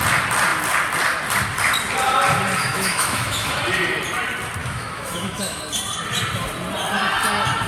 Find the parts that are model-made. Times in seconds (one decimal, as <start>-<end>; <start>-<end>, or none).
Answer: 2.6-3.6; 4.6-5.6